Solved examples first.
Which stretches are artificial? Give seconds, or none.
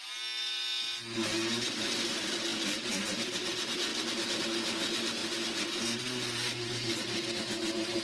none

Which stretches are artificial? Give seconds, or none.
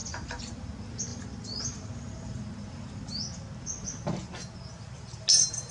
0.0-0.5 (vocoder, BigVGAN v2); 1.1-3.2